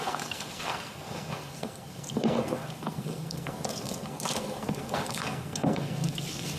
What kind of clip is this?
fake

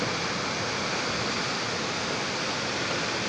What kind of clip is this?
real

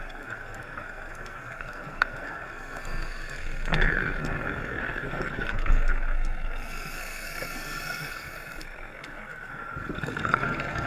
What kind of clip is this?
fake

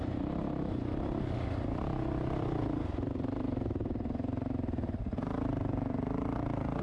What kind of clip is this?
real